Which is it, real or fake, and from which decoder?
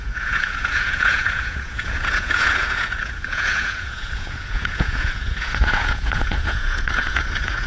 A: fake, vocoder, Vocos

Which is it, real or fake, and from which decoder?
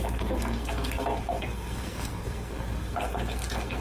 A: fake, codec, SNAC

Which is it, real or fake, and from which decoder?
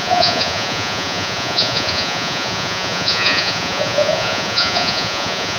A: fake, vocoder, Vocos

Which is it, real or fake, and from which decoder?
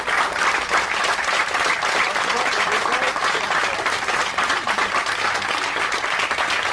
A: fake, vocoder, BigVGAN v2